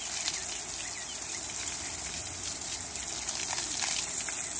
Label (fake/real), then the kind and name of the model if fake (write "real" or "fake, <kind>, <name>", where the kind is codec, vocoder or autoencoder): real